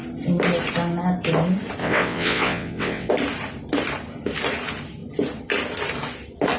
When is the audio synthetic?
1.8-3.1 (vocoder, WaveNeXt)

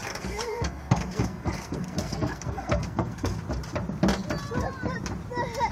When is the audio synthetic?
0.0-3.4 (codec, SNAC)

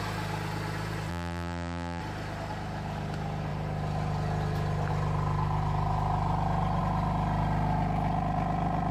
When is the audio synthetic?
1.1-2.0 (vocoder, BigVGAN v2)

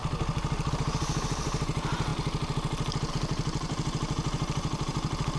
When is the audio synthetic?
0.7-2.1 (vocoder, BigVGAN v2); 3.1-5.4

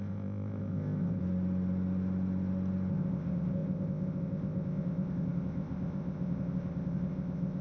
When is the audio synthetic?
0.0-1.2 (codec, ZipCodec); 2.9-7.6